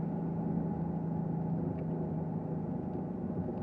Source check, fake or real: real